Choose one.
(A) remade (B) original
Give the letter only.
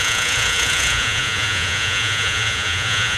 A